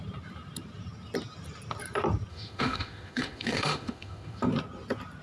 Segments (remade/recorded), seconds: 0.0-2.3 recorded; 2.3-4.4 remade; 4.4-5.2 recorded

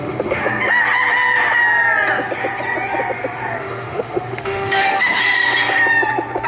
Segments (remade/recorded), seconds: 0.0-0.4 remade; 0.4-3.6 recorded; 3.6-5.2 remade; 5.2-6.5 recorded

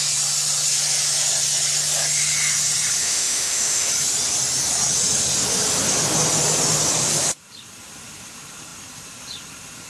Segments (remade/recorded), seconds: 0.0-3.0 recorded; 3.0-3.9 remade; 3.9-9.9 recorded